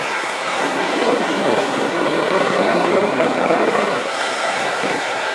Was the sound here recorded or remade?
remade